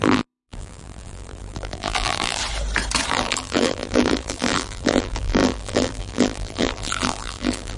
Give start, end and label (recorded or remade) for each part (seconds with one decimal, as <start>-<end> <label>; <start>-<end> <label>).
0.0-2.4 remade; 2.4-3.1 recorded; 3.1-7.8 remade